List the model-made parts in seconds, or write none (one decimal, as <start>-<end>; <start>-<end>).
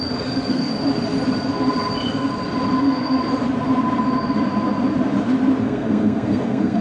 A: 0.0-0.7; 2.8-3.2; 5.6-6.8